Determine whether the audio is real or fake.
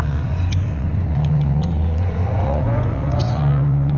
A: fake